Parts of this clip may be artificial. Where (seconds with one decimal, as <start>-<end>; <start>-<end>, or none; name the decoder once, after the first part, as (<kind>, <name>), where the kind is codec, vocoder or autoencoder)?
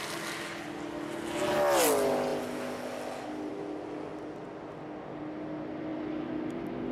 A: none